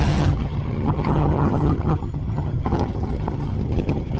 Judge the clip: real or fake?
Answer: fake